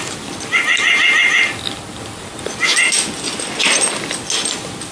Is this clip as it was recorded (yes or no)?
yes